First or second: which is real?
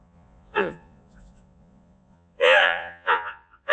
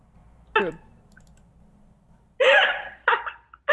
second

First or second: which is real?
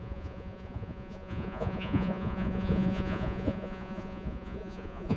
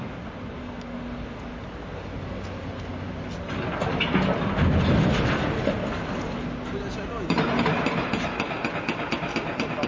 second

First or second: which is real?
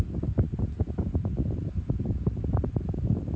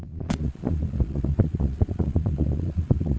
first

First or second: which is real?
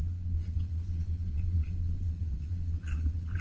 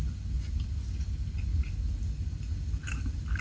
second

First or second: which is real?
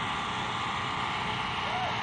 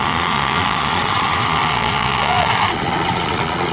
first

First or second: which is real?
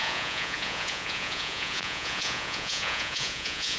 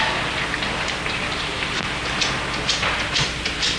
second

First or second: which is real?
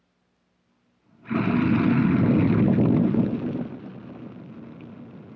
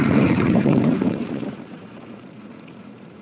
first